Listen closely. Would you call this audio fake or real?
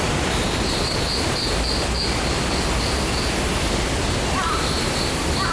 real